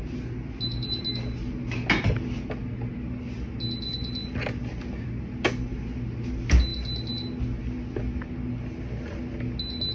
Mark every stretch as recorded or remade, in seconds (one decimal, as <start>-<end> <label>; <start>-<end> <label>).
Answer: 0.0-9.9 recorded